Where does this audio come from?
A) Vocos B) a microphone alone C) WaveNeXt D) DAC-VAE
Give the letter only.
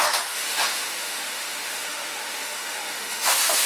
D